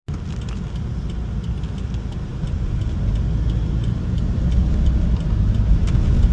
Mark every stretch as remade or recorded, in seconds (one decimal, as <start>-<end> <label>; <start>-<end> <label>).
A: 0.0-6.3 recorded